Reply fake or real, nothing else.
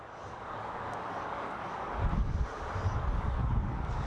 fake